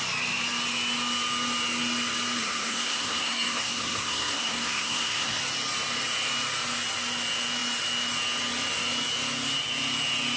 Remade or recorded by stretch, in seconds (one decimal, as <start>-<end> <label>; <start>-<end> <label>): 0.0-2.4 recorded; 2.4-5.4 remade; 5.4-10.4 recorded